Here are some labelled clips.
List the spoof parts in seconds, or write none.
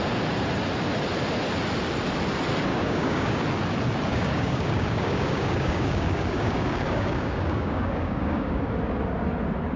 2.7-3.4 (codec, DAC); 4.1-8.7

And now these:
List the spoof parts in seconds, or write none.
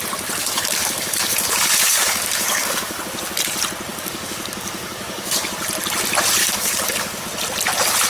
0.4-3.0 (codec, DAC); 3.9-5.5; 6.4-7.2